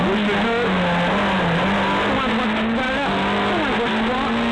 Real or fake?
real